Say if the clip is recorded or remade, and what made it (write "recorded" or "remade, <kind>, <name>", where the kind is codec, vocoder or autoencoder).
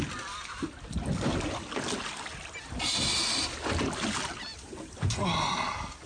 recorded